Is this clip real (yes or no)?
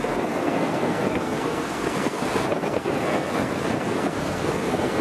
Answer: no